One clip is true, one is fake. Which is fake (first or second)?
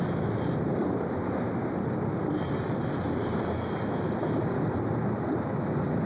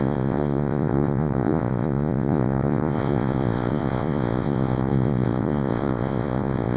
second